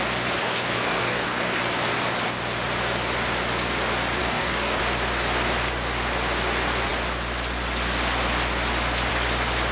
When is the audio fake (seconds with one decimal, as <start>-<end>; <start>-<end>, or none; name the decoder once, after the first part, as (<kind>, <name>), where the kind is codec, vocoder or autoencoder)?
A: 0.4-1.6 (codec, DAC); 4.2-4.8